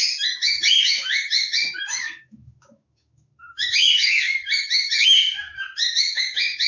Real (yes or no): no